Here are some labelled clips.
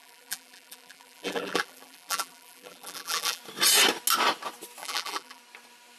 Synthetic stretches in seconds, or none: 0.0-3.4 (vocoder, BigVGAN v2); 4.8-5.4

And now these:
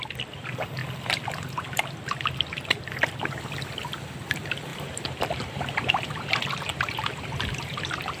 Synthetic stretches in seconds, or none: 4.7-7.2 (vocoder, BigVGAN v2)